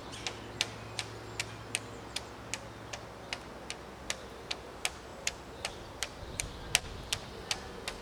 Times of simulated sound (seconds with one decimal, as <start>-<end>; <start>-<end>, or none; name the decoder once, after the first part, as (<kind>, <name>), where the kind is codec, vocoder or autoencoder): 5.1-6.4 (vocoder, BigVGAN v2)